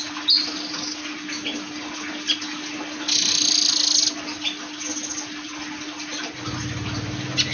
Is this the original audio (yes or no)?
yes